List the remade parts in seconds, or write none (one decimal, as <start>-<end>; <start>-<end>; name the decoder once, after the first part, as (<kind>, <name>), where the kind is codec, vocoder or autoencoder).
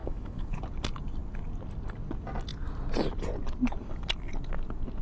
0.0-0.6 (autoencoder, DAC-VAE)